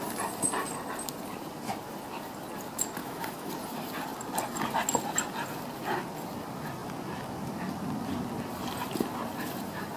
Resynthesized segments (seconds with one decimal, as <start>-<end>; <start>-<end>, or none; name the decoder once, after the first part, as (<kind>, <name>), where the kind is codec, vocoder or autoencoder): 3.0-3.5 (autoencoder, DAC-VAE)